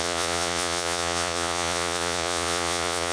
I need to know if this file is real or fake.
fake